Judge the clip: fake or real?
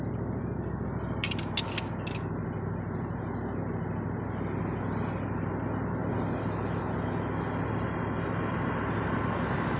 real